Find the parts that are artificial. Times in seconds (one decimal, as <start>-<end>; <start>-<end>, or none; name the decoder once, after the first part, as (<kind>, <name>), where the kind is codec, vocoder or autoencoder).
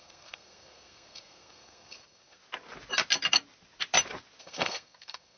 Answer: 0.0-2.4 (codec, SNAC); 4.4-5.4